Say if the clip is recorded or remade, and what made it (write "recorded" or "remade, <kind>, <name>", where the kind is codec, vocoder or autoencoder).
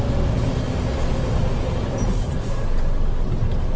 recorded